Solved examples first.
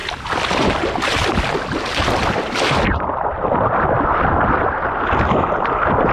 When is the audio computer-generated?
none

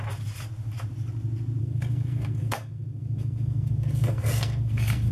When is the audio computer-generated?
1.6-5.1 (codec, SNAC)

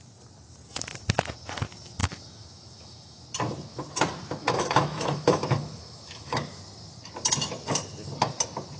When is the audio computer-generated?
2.0-3.2 (autoencoder, DAC-VAE); 4.4-6.6

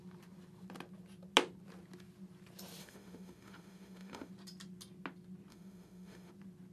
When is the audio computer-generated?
2.8-4.3 (autoencoder, DAC-VAE); 5.5-6.3

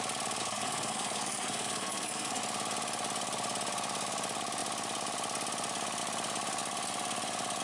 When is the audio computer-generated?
0.4-2.4 (codec, SNAC)

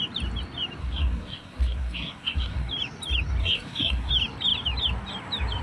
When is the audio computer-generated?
0.8-2.7 (codec, SNAC); 3.4-4.1

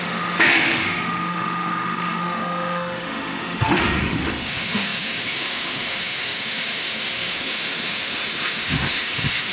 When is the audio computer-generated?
0.0-9.5 (autoencoder, DAC-VAE)